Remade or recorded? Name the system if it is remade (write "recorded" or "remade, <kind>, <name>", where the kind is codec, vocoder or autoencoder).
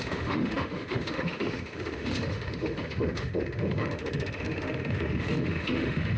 remade, autoencoder, DAC-VAE